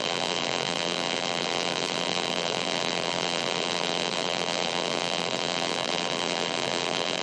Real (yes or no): no